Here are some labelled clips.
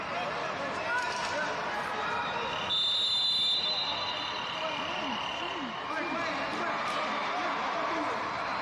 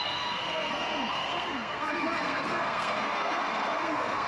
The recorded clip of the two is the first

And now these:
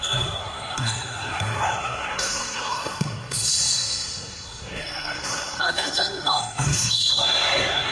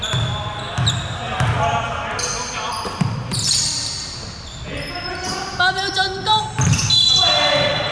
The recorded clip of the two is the second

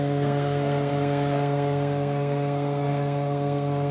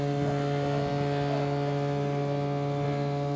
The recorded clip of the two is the second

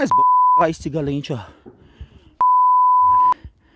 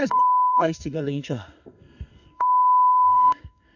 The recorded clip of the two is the first